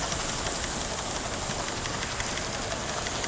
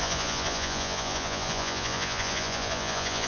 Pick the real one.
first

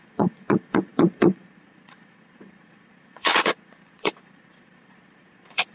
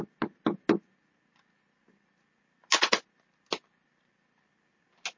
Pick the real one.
second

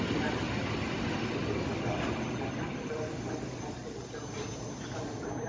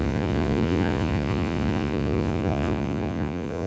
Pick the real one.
first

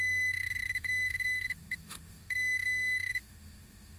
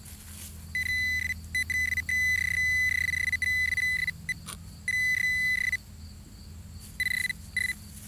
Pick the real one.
second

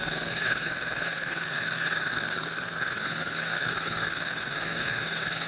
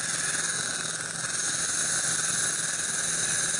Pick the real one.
second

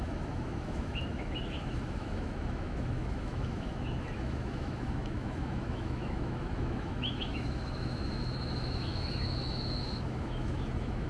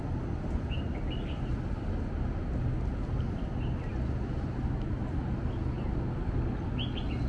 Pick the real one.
second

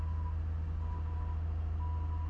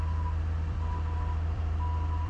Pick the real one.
first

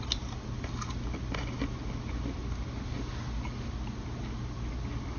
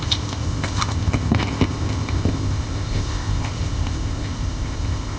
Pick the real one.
first